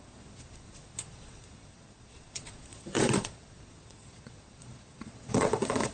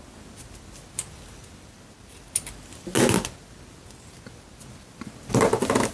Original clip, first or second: second